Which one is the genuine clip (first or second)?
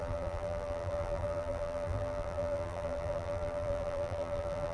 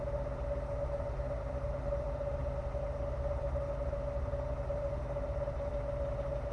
second